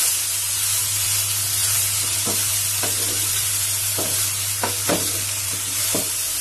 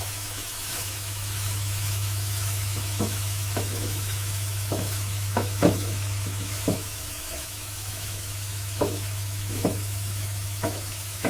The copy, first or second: second